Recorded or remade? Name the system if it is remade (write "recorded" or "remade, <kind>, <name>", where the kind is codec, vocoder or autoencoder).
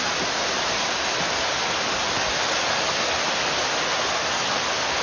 recorded